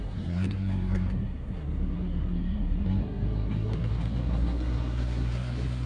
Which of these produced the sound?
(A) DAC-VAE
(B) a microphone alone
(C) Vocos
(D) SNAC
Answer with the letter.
D